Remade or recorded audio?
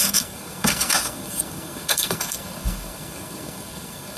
remade